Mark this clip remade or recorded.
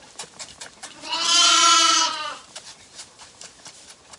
remade